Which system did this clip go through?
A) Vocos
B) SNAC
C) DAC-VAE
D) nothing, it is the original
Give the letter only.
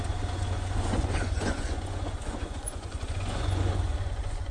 A